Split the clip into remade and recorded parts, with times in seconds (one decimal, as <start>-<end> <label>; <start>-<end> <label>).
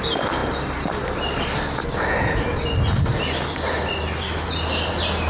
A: 0.0-5.3 recorded